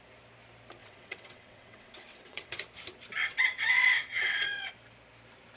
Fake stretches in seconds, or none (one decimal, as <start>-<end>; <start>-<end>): 0.8-2.5; 3.2-4.7